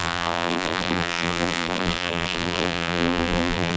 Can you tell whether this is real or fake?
fake